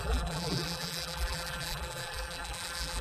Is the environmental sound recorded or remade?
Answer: remade